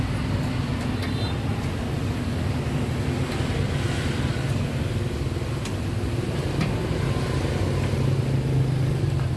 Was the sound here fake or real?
real